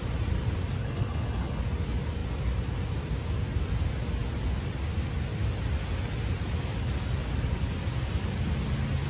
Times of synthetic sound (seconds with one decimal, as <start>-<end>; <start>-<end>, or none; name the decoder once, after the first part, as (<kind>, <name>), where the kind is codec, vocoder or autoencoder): 0.8-1.6 (codec, HILCodec)

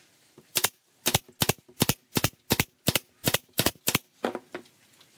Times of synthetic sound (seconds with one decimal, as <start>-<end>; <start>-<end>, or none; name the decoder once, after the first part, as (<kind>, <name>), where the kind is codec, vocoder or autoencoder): 3.2-3.8 (vocoder, BigVGAN v2)

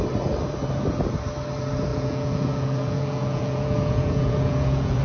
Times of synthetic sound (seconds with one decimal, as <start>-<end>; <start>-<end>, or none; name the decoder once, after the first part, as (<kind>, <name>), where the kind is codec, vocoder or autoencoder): 1.9-5.0 (vocoder, Vocos)